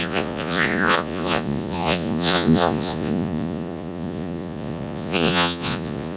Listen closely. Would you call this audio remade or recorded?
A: remade